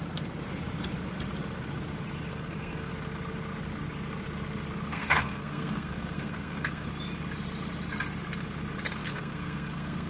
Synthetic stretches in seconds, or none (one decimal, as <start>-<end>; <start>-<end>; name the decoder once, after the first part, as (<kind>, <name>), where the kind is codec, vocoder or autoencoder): 2.3-2.9 (codec, SNAC); 4.9-6.9; 9.0-10.1